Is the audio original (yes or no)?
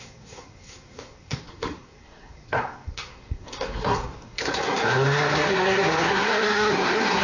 no